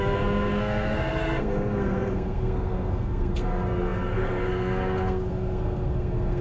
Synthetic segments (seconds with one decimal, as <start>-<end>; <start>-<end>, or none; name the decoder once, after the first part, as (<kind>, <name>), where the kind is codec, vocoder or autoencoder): 0.0-6.4 (codec, SNAC)